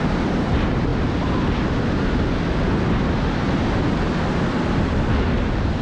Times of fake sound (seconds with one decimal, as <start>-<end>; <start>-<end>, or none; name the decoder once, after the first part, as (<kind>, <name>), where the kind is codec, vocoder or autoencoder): none